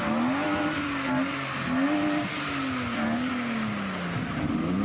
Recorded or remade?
recorded